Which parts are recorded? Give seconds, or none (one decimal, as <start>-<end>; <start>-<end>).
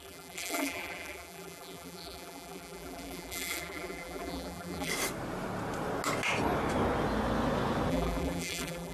4.9-7.9